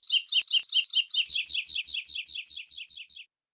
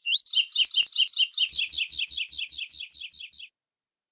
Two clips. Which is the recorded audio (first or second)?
first